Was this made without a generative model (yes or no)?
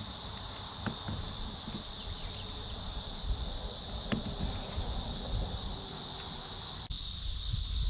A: yes